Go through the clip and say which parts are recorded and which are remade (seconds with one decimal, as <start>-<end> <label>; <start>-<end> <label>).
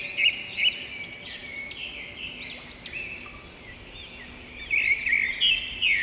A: 0.0-6.0 recorded